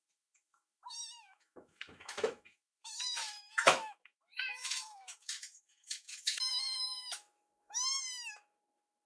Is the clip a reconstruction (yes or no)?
yes